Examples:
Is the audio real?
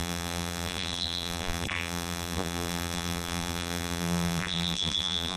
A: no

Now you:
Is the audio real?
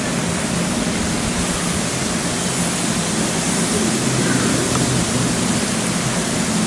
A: yes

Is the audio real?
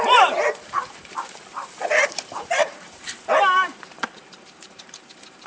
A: no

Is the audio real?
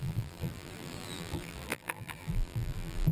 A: no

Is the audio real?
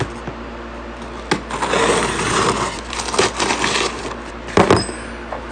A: yes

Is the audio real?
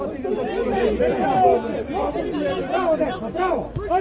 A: yes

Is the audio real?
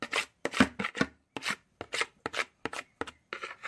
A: yes